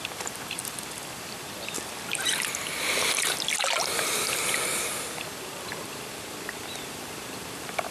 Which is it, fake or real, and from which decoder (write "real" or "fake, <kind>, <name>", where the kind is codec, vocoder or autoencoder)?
fake, vocoder, BigVGAN v2